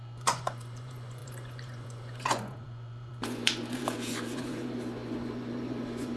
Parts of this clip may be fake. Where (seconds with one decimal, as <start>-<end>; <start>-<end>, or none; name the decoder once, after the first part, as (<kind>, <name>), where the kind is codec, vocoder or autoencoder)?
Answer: 0.0-6.2 (vocoder, Vocos)